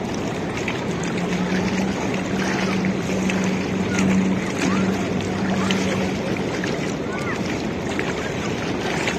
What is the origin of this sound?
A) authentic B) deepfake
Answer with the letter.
B